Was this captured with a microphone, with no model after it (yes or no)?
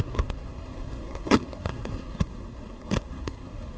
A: no